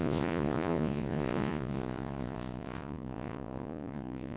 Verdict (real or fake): fake